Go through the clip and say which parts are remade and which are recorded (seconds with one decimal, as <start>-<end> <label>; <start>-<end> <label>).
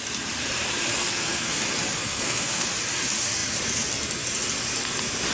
0.0-1.0 recorded; 1.0-1.6 remade; 1.6-2.0 recorded; 2.0-2.7 remade; 2.7-5.3 recorded